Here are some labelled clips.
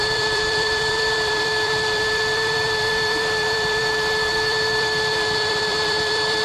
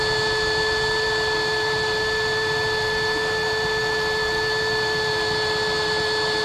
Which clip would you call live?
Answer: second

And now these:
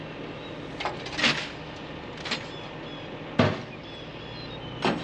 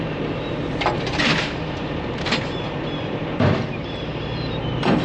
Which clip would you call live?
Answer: first